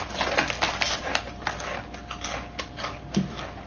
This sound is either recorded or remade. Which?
recorded